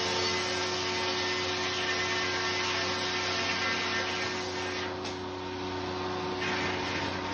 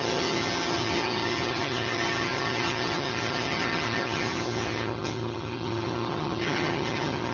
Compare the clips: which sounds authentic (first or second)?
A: first